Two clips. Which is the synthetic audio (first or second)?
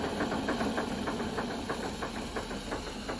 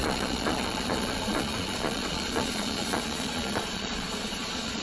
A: second